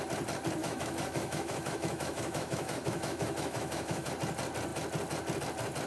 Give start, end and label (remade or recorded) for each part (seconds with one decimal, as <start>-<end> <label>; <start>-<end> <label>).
0.0-0.6 recorded; 0.6-4.1 remade; 4.1-5.9 recorded